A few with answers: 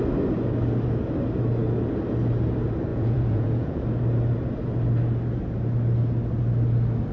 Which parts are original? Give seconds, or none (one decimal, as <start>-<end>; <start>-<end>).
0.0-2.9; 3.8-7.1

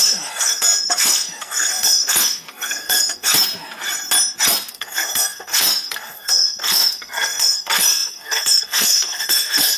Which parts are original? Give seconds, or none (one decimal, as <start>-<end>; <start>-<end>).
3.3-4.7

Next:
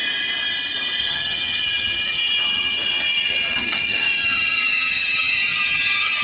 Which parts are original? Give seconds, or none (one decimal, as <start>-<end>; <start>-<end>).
0.0-1.0

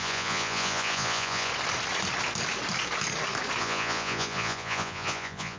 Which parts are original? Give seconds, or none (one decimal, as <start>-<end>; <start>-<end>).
1.5-3.6

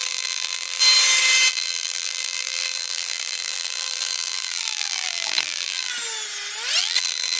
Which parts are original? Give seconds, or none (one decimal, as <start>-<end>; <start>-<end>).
0.8-1.5; 5.9-6.8

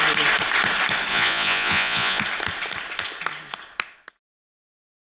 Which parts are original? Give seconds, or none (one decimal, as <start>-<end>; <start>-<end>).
0.0-1.1; 2.2-5.1